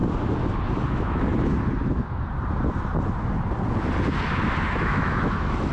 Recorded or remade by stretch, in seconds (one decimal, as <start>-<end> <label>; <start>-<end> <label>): 0.0-0.9 recorded; 0.9-1.3 remade; 1.3-4.7 recorded; 4.7-5.7 remade